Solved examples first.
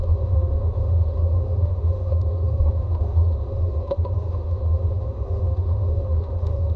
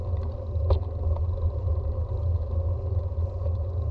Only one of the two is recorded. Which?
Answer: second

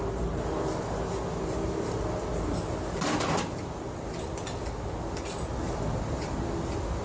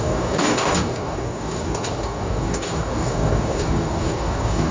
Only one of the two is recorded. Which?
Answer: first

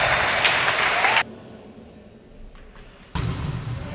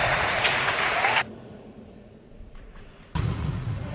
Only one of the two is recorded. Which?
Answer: first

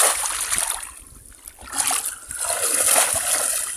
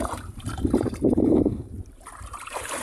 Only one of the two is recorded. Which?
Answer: first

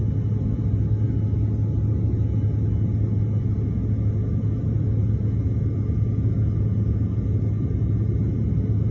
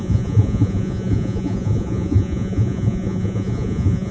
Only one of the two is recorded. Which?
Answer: first